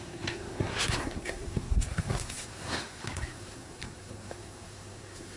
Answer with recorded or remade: remade